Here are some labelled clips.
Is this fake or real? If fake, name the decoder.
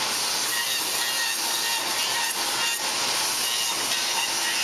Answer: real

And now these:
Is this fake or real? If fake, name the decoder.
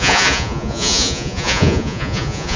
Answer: fake, vocoder, Vocos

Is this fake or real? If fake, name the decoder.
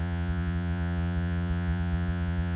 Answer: fake, vocoder, Vocos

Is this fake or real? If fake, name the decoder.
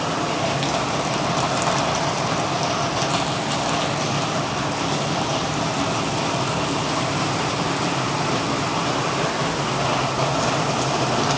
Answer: real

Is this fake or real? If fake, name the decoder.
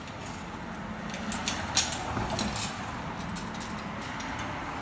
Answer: real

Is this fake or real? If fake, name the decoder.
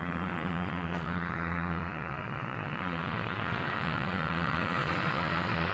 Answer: fake, vocoder, Vocos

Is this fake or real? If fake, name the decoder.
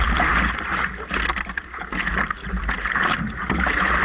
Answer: real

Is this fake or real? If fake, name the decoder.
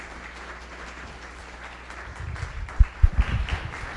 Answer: real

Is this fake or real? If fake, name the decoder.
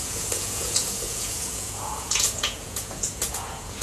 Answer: fake, vocoder, Vocos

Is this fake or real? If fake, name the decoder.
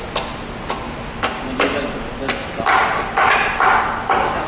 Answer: real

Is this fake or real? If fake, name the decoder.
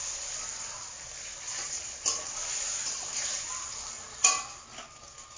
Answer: real